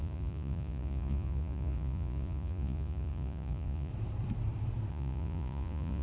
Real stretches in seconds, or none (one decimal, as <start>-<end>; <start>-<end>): 3.9-4.9